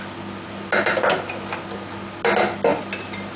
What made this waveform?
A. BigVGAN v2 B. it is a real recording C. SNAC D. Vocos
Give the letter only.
B